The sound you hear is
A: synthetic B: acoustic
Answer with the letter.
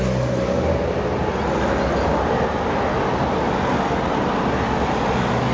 B